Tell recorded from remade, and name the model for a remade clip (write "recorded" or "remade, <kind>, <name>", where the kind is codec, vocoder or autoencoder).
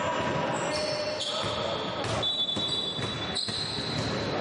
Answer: recorded